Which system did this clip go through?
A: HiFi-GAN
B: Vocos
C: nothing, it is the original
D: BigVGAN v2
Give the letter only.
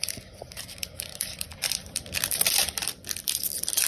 D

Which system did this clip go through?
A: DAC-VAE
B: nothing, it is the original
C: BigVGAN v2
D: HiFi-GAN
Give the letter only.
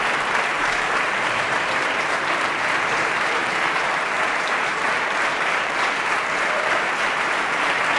C